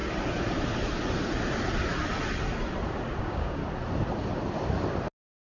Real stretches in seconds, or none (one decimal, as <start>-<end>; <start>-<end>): 0.0-3.2; 3.6-5.4

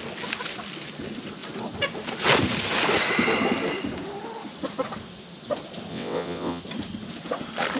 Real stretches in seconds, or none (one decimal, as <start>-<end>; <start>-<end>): 0.0-5.9; 6.6-7.8

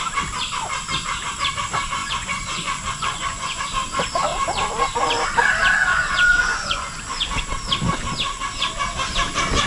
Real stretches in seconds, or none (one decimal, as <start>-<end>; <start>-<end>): 0.0-2.0; 3.6-5.8; 7.5-9.7

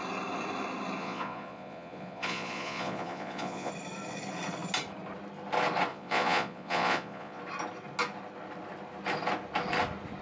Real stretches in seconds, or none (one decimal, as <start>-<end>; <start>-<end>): 0.0-1.0; 3.7-5.9; 7.4-10.2

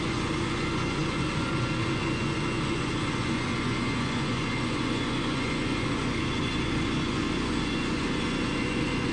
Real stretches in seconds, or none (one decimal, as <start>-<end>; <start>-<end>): none